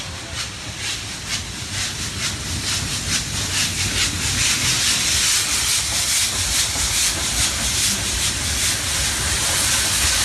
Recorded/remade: recorded